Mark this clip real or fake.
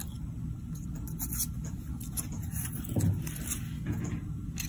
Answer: real